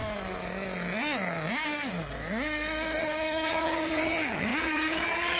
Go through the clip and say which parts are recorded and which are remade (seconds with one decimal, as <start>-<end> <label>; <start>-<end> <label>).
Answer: 0.0-3.0 recorded; 3.0-5.4 remade